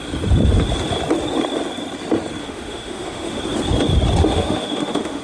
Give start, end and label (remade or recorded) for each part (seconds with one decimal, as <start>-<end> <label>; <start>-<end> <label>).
0.0-2.4 recorded; 2.4-3.4 remade; 3.4-4.2 recorded; 4.2-5.2 remade